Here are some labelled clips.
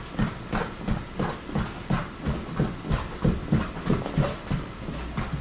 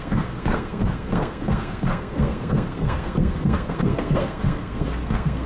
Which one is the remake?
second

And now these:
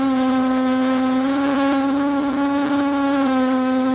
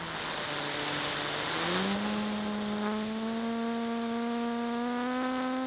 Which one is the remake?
first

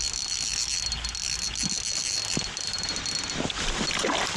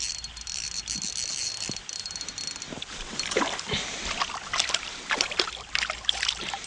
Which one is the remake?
second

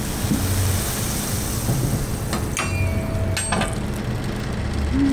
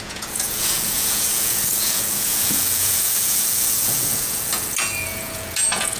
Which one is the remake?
second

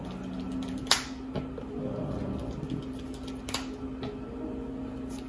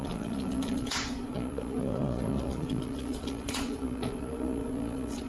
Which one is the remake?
second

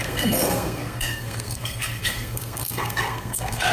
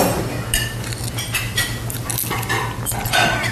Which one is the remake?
first